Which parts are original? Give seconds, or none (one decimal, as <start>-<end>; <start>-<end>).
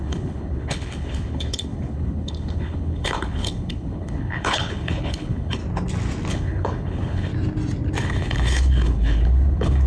5.6-6.3; 7.3-8.0